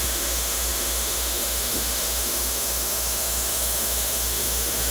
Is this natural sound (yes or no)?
no